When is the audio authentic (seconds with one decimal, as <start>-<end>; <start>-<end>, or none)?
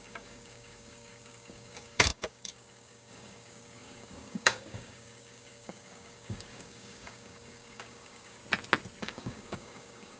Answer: 8.4-9.0